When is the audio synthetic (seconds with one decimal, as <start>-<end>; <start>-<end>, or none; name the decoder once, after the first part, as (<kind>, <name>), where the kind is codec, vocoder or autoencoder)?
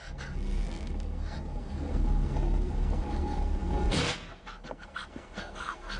0.0-6.0 (codec, SNAC)